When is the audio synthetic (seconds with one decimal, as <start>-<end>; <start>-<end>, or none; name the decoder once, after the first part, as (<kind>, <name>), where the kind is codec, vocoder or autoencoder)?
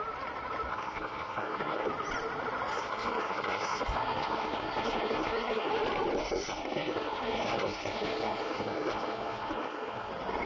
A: 0.7-1.9 (codec, SNAC); 2.7-5.7; 6.2-10.1